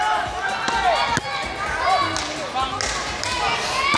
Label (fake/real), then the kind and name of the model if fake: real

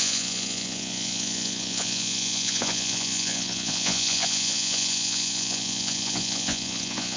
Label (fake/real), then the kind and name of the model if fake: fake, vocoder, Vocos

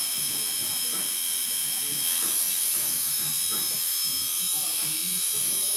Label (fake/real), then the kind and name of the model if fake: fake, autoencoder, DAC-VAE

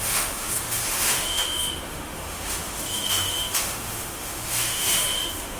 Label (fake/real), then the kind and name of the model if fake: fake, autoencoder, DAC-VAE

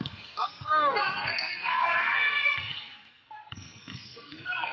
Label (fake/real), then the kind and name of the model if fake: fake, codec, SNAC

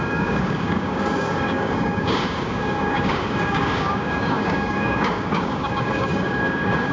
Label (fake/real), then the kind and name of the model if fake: fake, codec, DAC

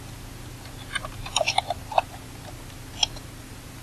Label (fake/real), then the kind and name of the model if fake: real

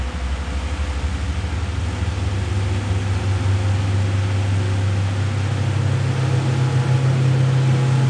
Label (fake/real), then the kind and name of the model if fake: real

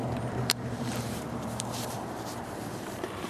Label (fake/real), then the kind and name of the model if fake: fake, vocoder, BigVGAN v2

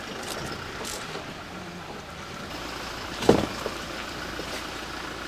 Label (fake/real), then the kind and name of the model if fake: real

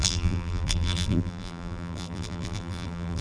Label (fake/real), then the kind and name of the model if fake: fake, vocoder, BigVGAN v2